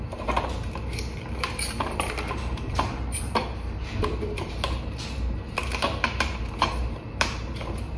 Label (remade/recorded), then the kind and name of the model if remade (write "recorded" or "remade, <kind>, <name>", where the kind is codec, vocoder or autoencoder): remade, vocoder, BigVGAN v2